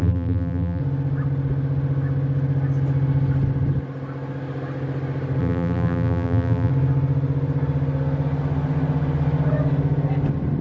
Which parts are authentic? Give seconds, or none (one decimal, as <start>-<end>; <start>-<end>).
0.8-5.4; 6.7-10.6